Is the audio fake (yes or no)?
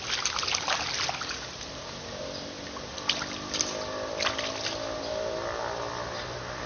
no